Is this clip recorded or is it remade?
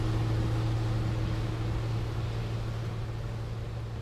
recorded